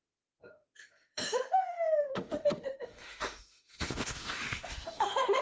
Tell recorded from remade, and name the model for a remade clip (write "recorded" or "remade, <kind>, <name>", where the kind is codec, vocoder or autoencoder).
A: remade, autoencoder, DAC-VAE